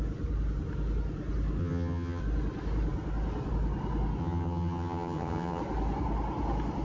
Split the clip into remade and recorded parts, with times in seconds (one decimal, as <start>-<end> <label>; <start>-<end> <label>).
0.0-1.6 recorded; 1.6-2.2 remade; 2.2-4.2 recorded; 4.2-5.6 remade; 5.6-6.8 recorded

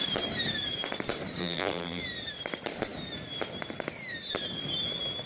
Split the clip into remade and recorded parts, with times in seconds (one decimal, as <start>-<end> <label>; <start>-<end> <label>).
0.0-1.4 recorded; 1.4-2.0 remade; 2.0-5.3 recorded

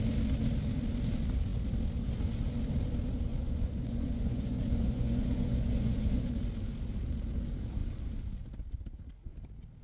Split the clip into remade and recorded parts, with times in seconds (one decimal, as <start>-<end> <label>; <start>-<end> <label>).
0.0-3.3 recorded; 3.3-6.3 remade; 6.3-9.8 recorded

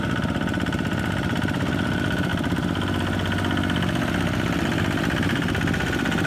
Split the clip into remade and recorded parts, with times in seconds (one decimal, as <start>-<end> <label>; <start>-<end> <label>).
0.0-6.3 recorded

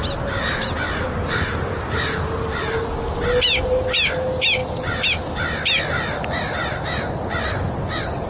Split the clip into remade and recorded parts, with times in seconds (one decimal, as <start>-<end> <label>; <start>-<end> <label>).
0.0-8.3 recorded

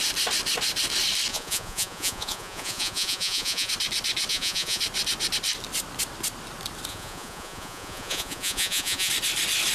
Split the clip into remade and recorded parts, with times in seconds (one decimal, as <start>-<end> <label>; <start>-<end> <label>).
0.0-1.3 recorded; 1.3-3.7 remade; 3.7-4.3 recorded; 4.3-4.8 remade; 4.8-6.9 recorded; 6.9-9.1 remade; 9.1-9.7 recorded